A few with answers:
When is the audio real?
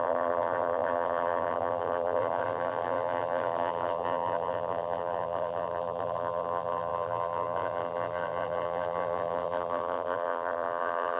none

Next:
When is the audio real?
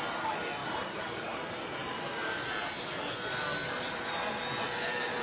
0.0-0.6; 2.5-3.6; 4.3-5.2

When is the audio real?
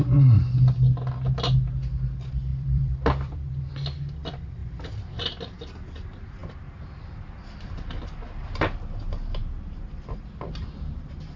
0.0-2.5; 3.7-11.4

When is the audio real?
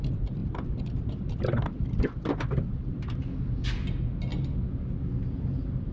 0.0-5.9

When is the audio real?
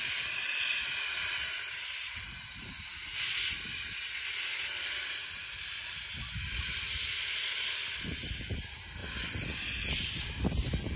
0.0-11.0